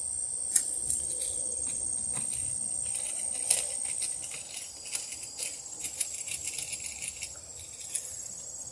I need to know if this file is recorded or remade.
recorded